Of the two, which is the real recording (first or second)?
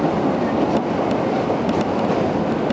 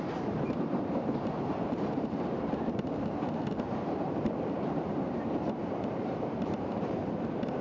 first